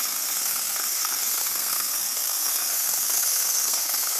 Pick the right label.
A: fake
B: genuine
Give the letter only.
A